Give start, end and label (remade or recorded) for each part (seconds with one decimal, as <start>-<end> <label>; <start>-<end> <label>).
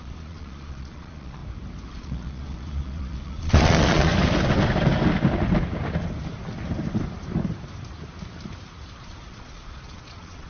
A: 0.0-1.4 remade; 1.4-1.9 recorded; 1.9-4.1 remade; 4.1-9.0 recorded; 9.0-10.5 remade